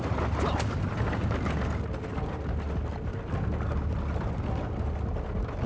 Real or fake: real